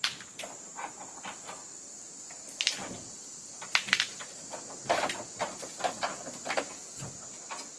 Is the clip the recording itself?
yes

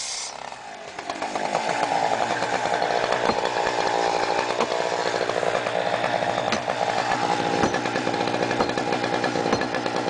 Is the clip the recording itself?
yes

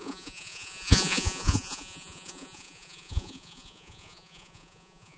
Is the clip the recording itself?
no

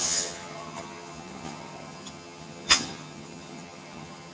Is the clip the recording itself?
no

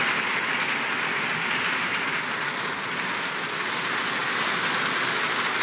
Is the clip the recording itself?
yes